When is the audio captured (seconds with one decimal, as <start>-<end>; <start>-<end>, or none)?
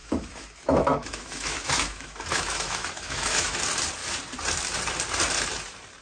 3.6-6.0